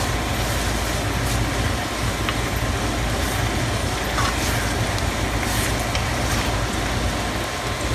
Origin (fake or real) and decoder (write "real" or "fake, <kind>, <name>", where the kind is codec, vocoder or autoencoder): real